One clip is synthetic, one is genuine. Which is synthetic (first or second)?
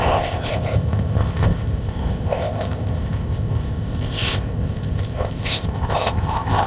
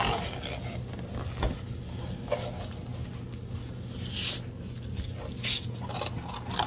first